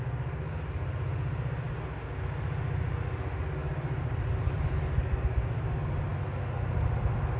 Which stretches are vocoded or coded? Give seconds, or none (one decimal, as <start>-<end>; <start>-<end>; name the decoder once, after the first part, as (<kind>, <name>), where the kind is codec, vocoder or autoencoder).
3.6-4.8 (vocoder, BigVGAN v2)